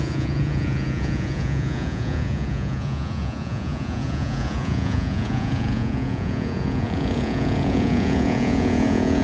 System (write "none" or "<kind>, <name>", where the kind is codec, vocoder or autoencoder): vocoder, Vocos